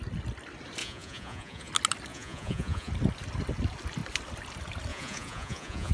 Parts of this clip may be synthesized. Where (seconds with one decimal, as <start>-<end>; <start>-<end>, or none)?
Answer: 0.8-1.7; 2.1-2.9; 4.9-5.9